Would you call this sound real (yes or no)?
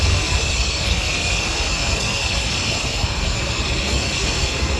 no